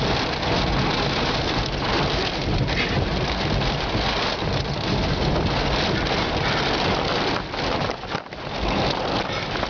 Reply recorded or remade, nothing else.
recorded